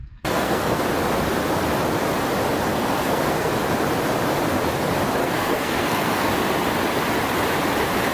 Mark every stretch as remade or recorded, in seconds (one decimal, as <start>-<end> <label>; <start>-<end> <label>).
0.0-0.8 remade; 0.8-2.7 recorded; 2.7-3.5 remade; 3.5-5.2 recorded; 5.2-6.3 remade; 6.3-8.1 recorded